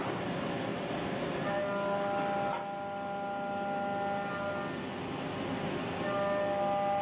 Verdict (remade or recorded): recorded